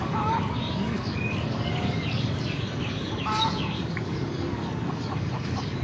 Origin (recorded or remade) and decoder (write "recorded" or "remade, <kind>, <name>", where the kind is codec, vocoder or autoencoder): remade, codec, DAC